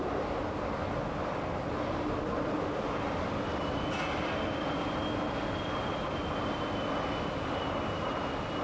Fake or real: real